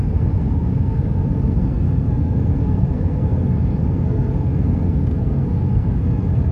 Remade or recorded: remade